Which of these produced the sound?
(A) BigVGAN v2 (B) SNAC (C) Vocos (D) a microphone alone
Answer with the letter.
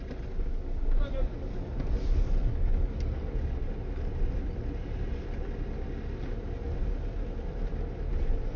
D